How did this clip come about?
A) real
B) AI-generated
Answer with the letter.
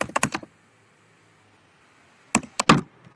A